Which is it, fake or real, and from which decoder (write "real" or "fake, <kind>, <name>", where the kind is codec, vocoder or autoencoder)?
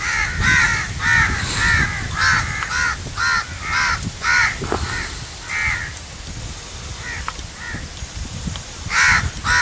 real